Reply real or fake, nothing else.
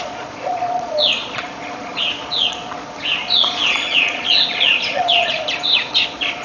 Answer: fake